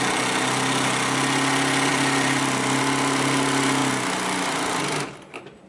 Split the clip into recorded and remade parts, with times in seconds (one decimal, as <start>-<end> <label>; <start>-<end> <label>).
0.0-5.7 recorded